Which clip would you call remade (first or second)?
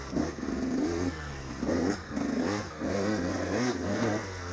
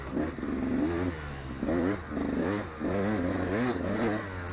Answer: first